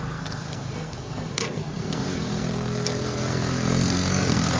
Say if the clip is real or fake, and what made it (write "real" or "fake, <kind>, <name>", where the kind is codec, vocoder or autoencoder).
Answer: fake, codec, SNAC